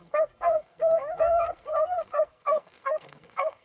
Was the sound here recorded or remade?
remade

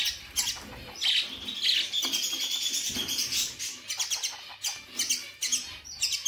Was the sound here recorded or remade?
recorded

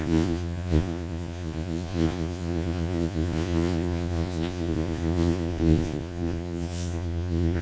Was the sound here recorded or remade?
remade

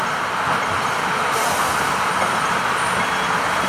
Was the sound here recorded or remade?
recorded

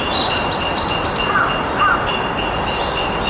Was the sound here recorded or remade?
recorded